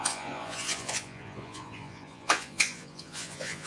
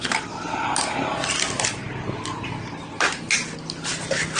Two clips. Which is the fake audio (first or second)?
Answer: first